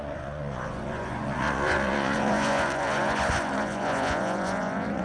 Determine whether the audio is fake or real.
fake